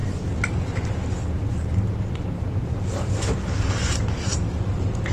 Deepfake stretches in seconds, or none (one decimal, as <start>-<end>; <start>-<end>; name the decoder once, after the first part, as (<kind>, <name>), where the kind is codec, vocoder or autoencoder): none